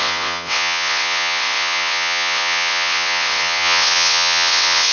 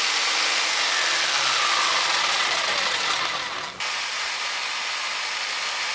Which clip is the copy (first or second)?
first